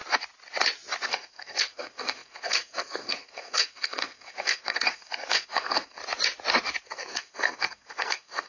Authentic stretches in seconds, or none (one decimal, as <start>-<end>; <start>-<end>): 0.0-1.1; 6.0-6.8